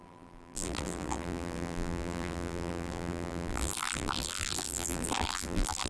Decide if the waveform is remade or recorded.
remade